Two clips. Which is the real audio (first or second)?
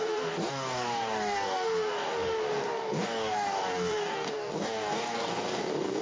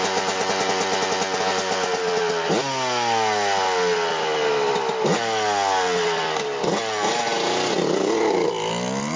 second